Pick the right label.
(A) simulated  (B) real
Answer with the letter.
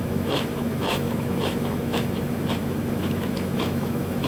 A